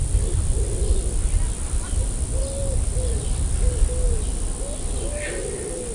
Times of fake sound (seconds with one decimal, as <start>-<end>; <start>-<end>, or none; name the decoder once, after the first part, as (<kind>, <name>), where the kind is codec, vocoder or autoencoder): none